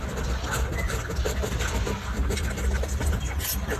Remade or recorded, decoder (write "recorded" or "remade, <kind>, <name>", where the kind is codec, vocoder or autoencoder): recorded